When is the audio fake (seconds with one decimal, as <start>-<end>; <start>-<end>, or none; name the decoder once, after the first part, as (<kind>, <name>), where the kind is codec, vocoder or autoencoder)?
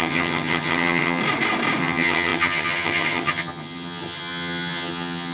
0.0-1.2 (vocoder, HiFi-GAN); 1.8-5.3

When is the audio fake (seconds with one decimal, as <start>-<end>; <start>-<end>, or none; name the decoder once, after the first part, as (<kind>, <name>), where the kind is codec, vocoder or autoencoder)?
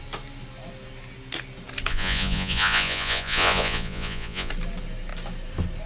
1.9-4.5 (vocoder, Vocos)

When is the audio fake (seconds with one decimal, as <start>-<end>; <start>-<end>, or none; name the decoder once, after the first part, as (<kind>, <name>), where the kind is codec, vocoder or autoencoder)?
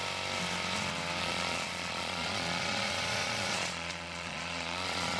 1.2-5.2 (vocoder, Vocos)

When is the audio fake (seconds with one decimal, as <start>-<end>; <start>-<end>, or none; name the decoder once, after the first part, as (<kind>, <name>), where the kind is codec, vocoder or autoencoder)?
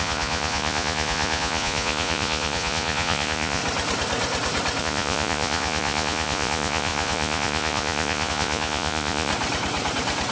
0.0-3.6 (vocoder, Vocos); 4.8-9.3